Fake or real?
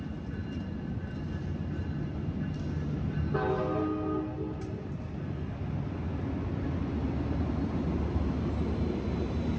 real